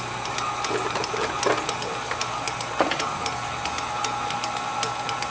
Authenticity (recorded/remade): recorded